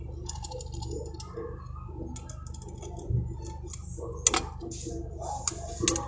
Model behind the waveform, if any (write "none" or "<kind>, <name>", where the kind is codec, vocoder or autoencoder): none